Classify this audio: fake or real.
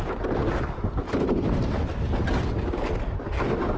real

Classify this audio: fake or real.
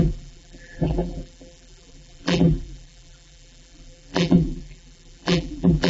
fake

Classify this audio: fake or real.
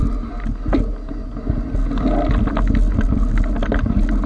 real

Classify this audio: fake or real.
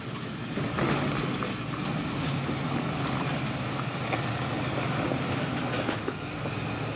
real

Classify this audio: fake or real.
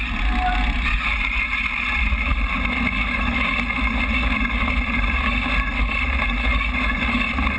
real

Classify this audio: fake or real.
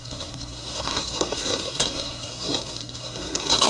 fake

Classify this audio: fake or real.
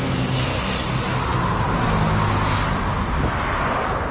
real